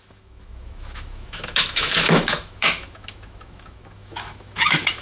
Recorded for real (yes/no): no